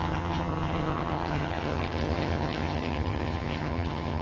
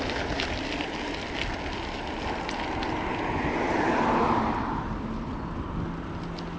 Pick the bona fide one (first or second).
second